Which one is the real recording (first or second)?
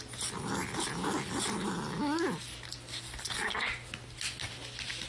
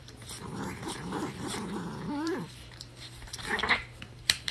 first